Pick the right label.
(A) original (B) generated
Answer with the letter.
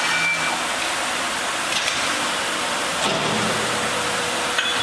A